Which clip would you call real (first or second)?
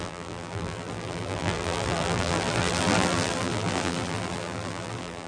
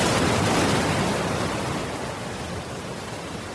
second